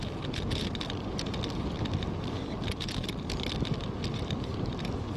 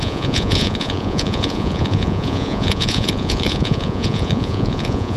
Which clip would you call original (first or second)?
first